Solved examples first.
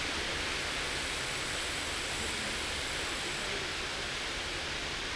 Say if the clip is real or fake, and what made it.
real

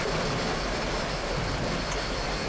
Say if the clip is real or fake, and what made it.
real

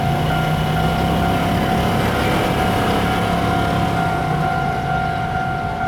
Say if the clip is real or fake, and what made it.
real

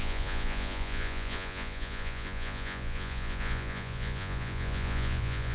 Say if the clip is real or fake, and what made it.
fake, vocoder, Vocos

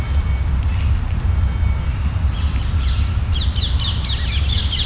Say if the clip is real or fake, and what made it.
real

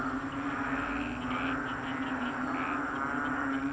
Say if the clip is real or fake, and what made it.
real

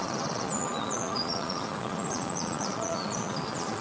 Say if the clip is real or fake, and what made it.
fake, vocoder, Vocos